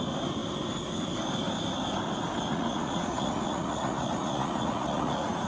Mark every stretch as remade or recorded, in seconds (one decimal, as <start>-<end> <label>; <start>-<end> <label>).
0.0-2.5 recorded; 2.5-5.5 remade